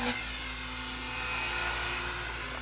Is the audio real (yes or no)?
yes